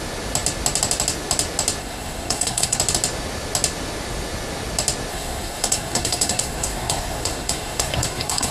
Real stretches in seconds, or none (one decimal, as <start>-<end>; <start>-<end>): 0.0-1.8; 2.8-5.1